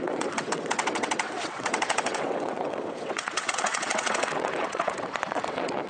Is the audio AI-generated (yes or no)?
yes